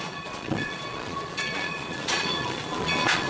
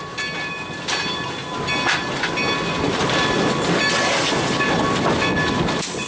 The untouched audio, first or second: second